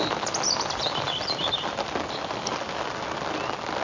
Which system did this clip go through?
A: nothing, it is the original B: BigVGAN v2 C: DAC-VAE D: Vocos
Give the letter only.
A